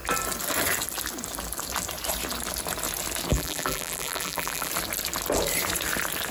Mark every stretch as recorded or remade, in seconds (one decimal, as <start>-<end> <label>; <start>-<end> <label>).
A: 0.0-3.3 recorded; 3.3-4.7 remade; 4.7-6.3 recorded